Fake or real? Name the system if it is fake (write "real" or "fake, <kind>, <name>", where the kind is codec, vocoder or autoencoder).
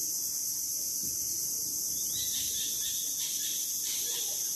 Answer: real